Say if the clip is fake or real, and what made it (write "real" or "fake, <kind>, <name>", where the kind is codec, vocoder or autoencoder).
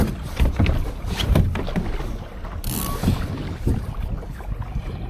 real